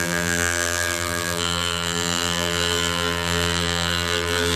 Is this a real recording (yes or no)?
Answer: no